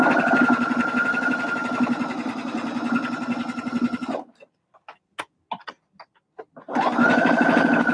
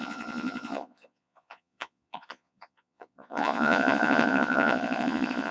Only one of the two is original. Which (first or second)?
first